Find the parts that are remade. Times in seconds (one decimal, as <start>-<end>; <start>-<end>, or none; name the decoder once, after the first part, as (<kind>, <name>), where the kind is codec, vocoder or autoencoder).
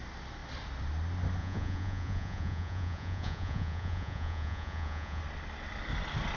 1.4-5.2 (vocoder, Vocos)